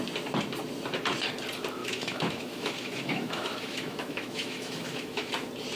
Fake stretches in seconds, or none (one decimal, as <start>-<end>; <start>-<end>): 1.8-5.3